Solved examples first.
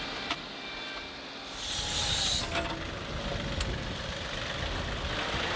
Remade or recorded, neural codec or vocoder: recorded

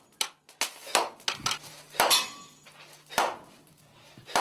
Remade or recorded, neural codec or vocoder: recorded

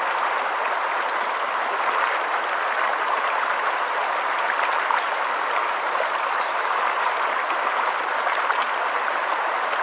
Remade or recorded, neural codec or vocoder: recorded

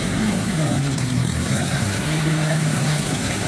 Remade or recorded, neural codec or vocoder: remade, codec, SNAC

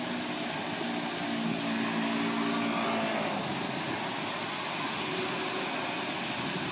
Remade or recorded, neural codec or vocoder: recorded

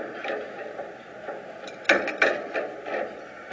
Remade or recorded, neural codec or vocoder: recorded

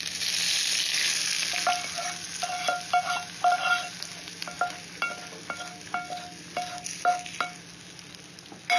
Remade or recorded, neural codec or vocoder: recorded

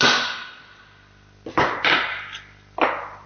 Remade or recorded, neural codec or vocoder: recorded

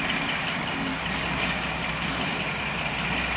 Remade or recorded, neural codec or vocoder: recorded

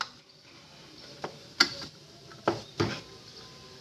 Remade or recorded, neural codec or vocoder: recorded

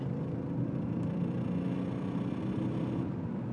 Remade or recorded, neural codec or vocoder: recorded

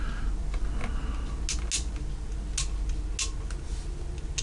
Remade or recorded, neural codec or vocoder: recorded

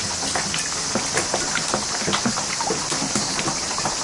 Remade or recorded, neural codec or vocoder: recorded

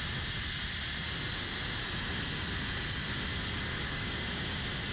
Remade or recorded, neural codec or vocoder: recorded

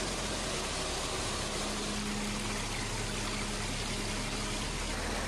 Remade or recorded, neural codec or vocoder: recorded